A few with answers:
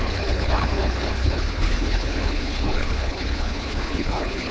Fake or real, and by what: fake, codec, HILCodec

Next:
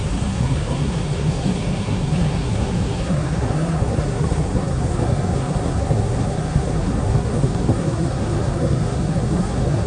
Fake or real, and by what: fake, codec, SNAC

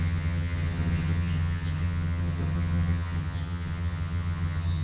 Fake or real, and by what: fake, vocoder, HiFi-GAN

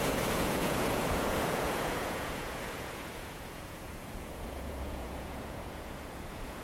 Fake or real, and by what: fake, vocoder, Vocos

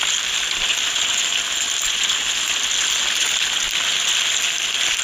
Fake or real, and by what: real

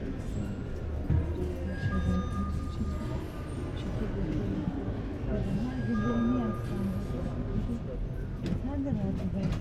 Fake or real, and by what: real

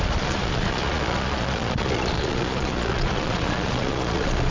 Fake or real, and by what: fake, vocoder, Vocos